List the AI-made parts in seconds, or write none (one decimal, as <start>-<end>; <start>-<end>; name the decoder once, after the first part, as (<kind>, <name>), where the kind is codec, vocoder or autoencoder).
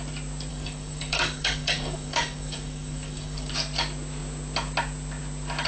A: 0.5-3.5 (codec, DAC)